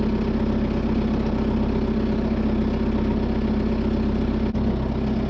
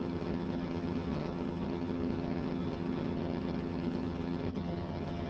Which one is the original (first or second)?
first